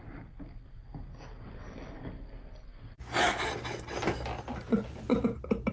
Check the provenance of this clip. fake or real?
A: real